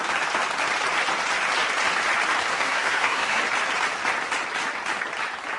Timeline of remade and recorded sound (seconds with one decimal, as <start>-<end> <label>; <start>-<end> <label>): 0.0-2.5 recorded; 2.5-3.4 remade; 3.4-5.6 recorded